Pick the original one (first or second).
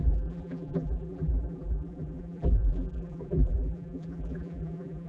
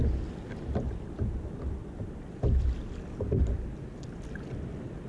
second